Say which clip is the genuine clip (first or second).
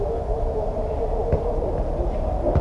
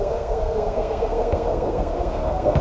first